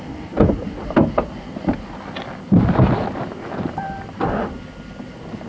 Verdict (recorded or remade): remade